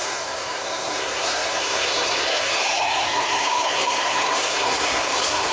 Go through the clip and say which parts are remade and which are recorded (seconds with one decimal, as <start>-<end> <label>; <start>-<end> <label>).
0.0-5.5 remade